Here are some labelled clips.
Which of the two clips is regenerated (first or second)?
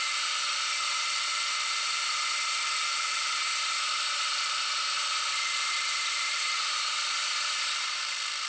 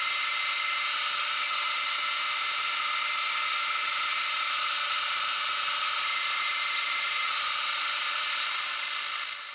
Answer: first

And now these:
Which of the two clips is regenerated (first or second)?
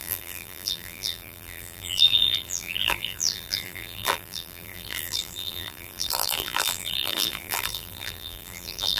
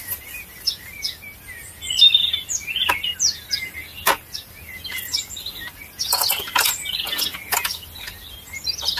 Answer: first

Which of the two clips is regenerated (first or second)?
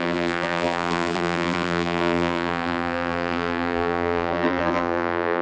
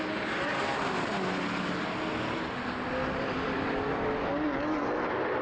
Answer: first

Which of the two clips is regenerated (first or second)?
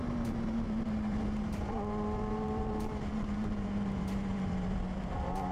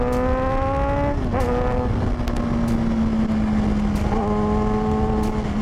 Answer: first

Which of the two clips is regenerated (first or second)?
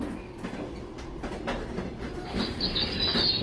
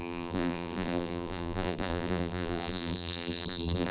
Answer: second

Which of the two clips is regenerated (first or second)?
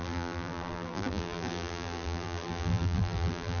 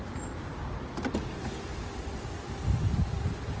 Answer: first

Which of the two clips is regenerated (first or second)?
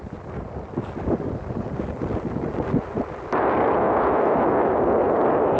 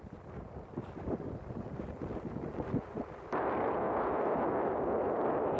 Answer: second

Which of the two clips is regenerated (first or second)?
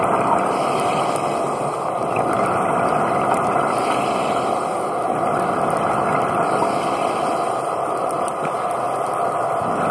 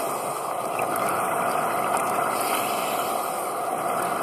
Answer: first